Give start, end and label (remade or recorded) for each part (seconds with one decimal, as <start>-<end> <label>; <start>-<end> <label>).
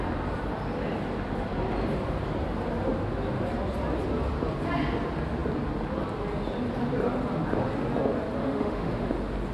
0.0-8.4 recorded; 8.4-9.1 remade; 9.1-9.5 recorded